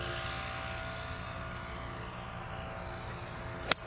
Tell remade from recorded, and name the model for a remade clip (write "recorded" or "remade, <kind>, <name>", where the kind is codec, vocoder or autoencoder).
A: recorded